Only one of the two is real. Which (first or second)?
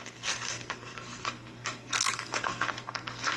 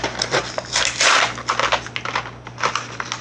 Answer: second